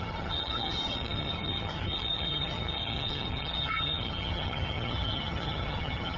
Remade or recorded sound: remade